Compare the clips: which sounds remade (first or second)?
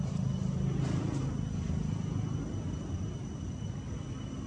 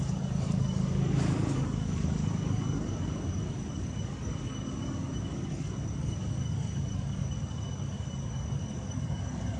second